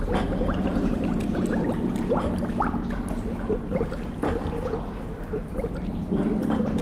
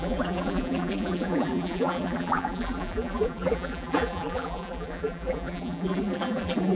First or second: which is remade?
second